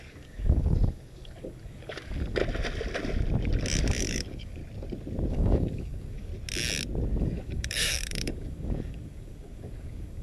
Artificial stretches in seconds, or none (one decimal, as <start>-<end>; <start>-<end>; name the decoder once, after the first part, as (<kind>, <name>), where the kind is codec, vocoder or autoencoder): 0.0-2.4 (codec, DAC); 4.0-4.6; 5.3-6.3; 7.2-10.2